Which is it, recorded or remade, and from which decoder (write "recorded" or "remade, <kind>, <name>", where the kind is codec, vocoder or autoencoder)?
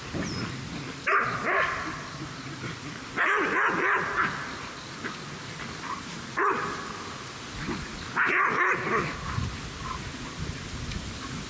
recorded